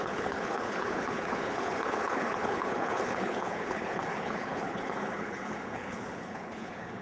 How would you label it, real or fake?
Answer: fake